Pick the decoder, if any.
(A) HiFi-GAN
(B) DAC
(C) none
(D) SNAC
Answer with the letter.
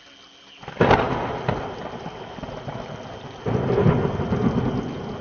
C